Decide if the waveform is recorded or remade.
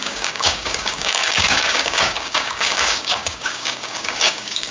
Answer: remade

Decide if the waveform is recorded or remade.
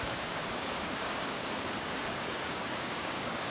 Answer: remade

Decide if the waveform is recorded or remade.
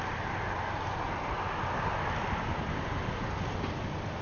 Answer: recorded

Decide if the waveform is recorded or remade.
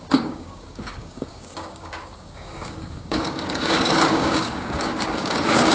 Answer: remade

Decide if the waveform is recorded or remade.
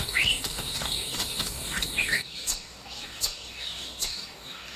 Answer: remade